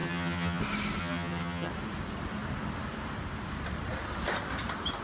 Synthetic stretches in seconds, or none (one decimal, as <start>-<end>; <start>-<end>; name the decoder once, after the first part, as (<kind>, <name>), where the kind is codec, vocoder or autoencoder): 0.0-0.6 (vocoder, HiFi-GAN); 1.0-1.7